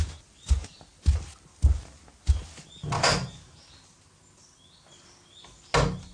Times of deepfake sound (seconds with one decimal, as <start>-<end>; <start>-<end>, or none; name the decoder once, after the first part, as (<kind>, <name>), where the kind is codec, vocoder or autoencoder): none